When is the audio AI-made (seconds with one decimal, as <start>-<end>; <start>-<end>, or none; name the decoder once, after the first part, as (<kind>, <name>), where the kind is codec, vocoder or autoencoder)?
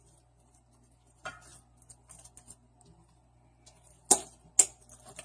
none